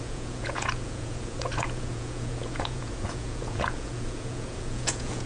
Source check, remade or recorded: remade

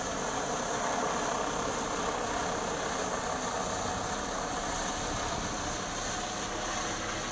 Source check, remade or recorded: recorded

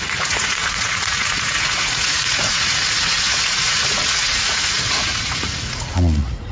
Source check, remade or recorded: remade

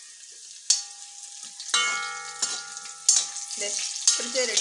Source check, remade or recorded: recorded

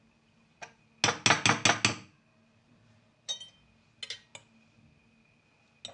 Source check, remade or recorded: recorded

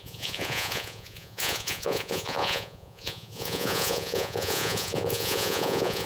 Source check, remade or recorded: remade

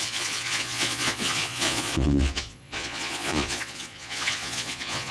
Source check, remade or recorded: remade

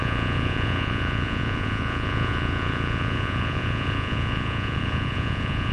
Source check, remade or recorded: remade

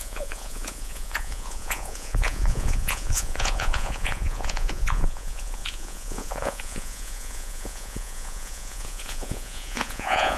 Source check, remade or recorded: remade